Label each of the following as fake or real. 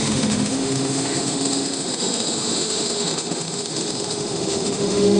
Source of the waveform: fake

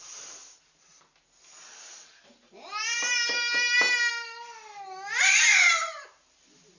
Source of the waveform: real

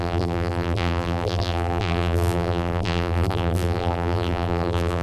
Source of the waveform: fake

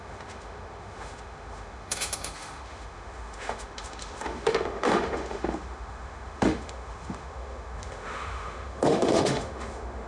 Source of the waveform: fake